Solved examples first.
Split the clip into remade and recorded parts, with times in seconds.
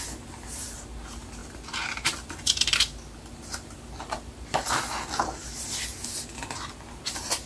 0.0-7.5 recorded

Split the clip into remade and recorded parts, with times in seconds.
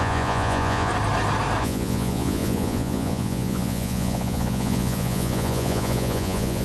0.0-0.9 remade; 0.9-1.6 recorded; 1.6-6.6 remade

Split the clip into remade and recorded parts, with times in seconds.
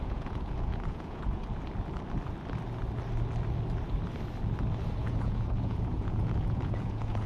0.0-1.4 remade; 1.4-5.0 recorded; 5.0-7.3 remade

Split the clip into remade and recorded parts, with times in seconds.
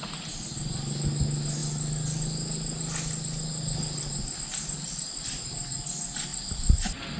0.0-7.2 recorded